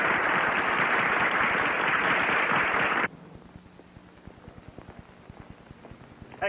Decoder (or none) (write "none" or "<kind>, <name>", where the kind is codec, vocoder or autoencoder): none